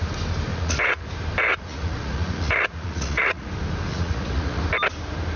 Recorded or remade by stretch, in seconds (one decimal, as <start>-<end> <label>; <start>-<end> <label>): 0.0-0.5 recorded; 0.5-1.1 remade; 1.1-1.5 recorded; 1.5-3.5 remade; 3.5-3.9 recorded; 3.9-4.6 remade; 4.6-5.4 recorded